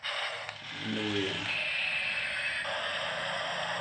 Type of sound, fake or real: real